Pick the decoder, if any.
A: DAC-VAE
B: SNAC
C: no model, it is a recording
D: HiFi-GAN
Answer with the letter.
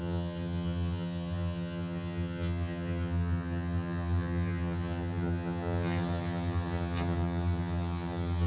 D